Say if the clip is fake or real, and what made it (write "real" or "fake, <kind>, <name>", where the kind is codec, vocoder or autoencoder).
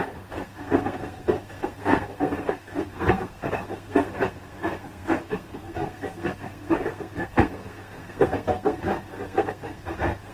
fake, codec, SNAC